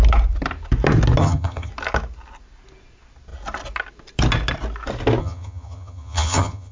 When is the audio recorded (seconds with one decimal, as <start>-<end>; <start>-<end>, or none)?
0.0-1.2; 1.7-5.2